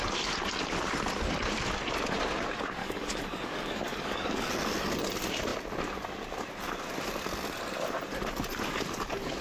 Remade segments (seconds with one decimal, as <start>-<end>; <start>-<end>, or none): 2.8-4.5